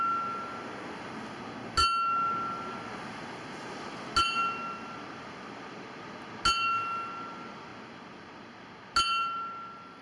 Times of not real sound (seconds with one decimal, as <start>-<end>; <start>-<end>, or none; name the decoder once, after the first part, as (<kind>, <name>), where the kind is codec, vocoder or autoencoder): none